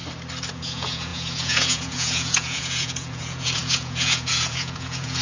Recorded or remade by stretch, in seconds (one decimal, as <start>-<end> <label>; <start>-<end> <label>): 0.0-0.5 recorded; 0.5-5.2 remade

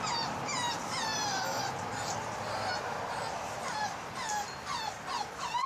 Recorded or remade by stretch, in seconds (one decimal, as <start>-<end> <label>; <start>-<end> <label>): 0.0-5.7 recorded

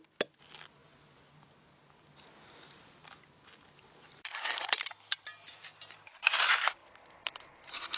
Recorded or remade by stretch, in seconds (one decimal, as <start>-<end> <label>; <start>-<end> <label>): 0.0-8.0 recorded